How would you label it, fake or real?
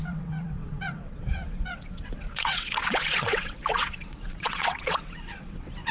fake